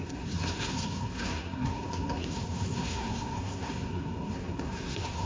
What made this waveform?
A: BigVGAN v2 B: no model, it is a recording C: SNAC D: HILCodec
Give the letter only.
C